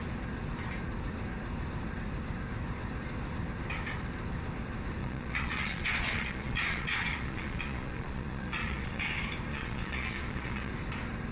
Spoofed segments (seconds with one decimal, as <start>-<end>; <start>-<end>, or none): 5.0-9.1; 9.5-10.7

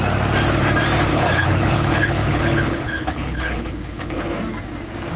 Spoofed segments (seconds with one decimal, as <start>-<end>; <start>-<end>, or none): 1.1-4.2

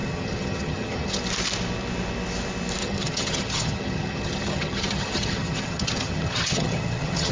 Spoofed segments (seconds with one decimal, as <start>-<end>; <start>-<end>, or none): 0.0-1.2; 2.8-7.3

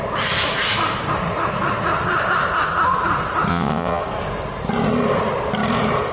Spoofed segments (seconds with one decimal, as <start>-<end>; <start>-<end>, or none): 3.5-4.0

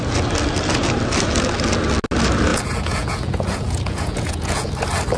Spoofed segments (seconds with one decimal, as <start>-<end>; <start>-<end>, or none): 2.5-4.7